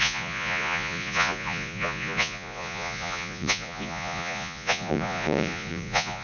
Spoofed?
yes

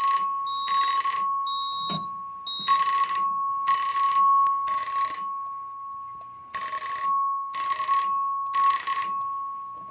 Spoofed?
no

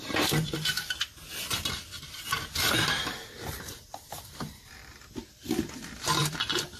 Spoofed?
yes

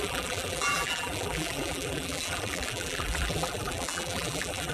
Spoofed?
yes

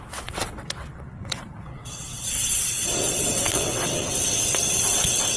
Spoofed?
yes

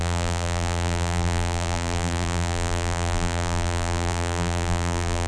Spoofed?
yes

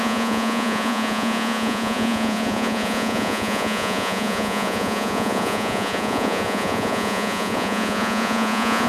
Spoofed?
yes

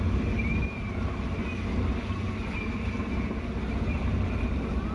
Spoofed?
no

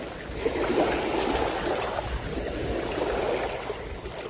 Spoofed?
no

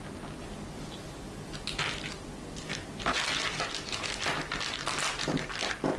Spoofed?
no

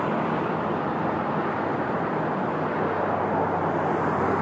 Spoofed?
no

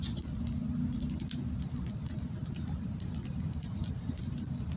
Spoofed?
yes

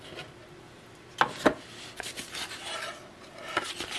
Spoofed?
no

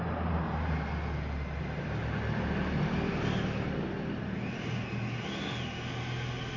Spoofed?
no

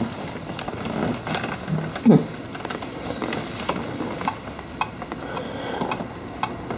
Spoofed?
no